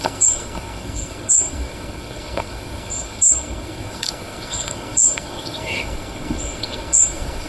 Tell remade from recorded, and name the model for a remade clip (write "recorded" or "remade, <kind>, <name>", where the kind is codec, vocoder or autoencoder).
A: remade, codec, SNAC